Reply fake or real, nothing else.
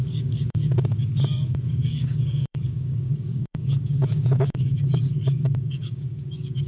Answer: fake